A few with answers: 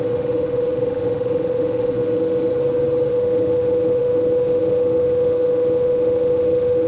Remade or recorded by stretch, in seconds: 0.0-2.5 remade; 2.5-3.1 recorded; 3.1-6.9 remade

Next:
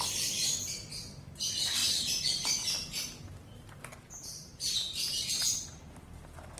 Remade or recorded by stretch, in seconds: 0.0-6.6 recorded

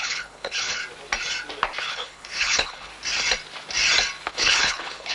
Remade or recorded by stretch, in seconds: 0.0-0.8 remade; 0.8-1.8 recorded; 1.8-2.9 remade; 2.9-4.3 recorded; 4.3-5.1 remade